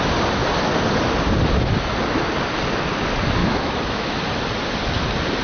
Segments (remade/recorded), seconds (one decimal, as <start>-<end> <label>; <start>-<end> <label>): 0.0-3.4 recorded; 3.4-4.2 remade; 4.2-5.4 recorded